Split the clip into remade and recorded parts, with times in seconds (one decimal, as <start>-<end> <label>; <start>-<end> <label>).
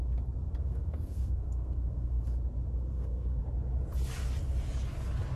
0.0-0.6 recorded; 0.6-2.2 remade; 2.2-2.9 recorded; 2.9-3.4 remade; 3.4-5.4 recorded